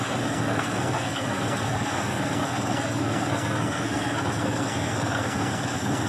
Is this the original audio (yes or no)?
no